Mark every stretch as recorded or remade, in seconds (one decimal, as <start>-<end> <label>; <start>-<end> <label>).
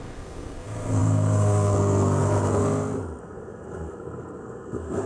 0.0-2.6 remade; 2.6-3.2 recorded; 3.2-5.1 remade